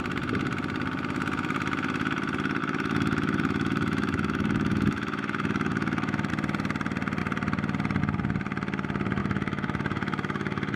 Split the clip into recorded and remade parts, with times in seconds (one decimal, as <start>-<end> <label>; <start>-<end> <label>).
0.0-2.6 recorded; 2.6-6.3 remade; 6.3-9.2 recorded; 9.2-10.8 remade